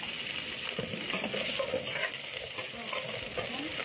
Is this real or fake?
real